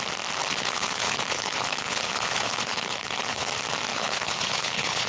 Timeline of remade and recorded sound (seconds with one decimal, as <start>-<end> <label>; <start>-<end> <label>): 0.0-0.4 recorded; 0.4-3.5 remade; 3.5-3.9 recorded; 3.9-5.1 remade